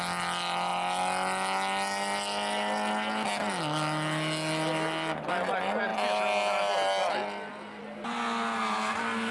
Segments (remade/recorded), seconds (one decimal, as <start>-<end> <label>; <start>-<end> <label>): 0.0-9.3 recorded